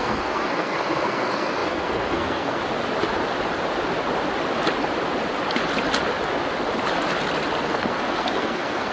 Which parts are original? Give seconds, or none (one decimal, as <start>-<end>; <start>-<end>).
2.6-7.6